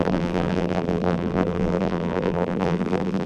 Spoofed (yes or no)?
yes